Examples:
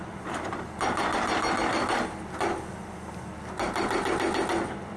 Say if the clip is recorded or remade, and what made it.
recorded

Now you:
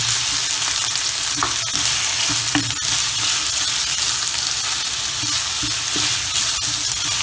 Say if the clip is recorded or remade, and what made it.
recorded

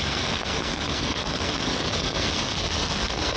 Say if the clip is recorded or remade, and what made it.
remade, codec, SNAC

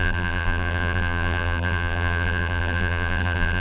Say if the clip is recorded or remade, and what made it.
remade, vocoder, BigVGAN v2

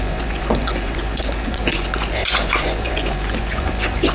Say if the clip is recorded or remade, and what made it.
remade, vocoder, Vocos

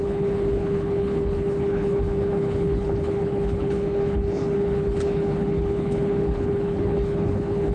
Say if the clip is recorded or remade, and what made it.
remade, codec, HILCodec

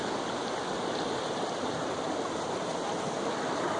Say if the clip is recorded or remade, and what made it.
recorded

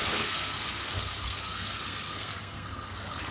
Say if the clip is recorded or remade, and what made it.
remade, codec, SNAC